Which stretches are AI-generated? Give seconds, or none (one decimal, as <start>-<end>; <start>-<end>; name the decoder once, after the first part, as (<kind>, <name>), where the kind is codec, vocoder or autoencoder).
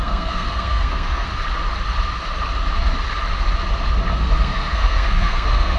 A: 0.0-1.3 (codec, SNAC); 4.2-5.8